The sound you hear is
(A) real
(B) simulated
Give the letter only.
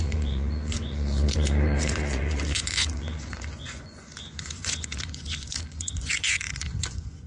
B